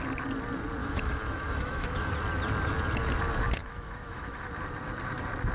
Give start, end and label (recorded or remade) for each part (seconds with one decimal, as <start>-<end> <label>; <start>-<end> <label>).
0.0-0.8 recorded; 0.8-2.1 remade; 2.1-3.6 recorded; 3.6-4.5 remade; 4.5-5.5 recorded